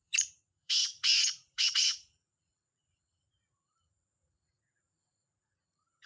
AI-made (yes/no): yes